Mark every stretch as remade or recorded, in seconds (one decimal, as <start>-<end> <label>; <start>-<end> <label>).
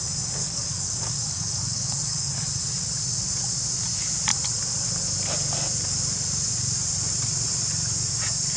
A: 0.0-0.4 recorded; 0.4-2.3 remade; 2.3-8.6 recorded